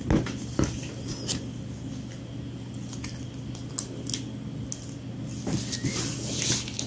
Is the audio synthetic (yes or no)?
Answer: no